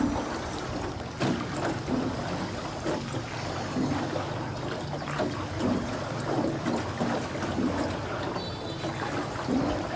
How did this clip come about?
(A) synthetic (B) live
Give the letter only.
B